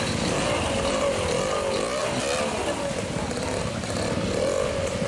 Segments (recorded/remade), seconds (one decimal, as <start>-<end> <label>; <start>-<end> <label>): 0.0-5.1 recorded